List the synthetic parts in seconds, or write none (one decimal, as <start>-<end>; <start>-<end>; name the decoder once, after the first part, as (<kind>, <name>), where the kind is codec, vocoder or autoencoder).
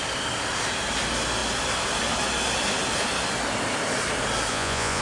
4.5-5.0 (vocoder, Vocos)